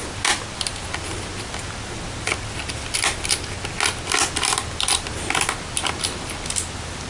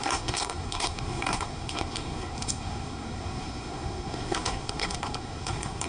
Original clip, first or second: first